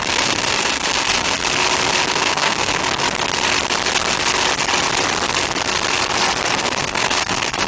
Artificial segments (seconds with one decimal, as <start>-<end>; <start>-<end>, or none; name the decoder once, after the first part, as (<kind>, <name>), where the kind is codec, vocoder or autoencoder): 0.0-1.4 (codec, SNAC); 2.1-2.8; 6.6-7.7

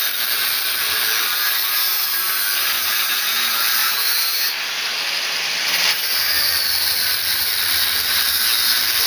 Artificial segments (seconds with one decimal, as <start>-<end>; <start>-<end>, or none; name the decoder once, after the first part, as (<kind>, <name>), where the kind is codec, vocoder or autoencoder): 3.8-7.5 (vocoder, BigVGAN v2)

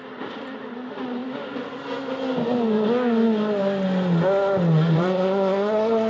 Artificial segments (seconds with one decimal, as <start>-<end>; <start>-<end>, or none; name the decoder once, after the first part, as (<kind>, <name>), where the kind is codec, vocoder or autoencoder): 0.0-1.2 (vocoder, BigVGAN v2); 4.9-6.1

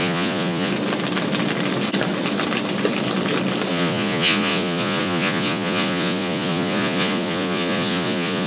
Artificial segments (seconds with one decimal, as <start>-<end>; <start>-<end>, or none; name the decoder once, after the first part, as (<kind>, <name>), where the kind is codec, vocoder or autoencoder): 0.0-0.7 (vocoder, Vocos); 3.7-8.5

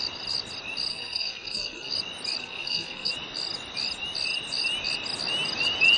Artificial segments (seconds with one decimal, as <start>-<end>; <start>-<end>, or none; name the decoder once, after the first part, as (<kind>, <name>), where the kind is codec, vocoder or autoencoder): 0.9-1.9 (codec, SNAC); 2.4-3.1